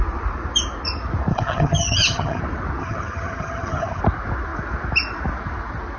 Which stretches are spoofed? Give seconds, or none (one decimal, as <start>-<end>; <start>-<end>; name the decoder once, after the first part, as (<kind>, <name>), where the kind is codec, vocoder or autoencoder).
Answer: 1.3-2.4 (vocoder, HiFi-GAN); 2.8-4.0